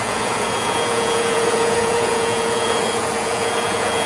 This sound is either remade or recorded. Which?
remade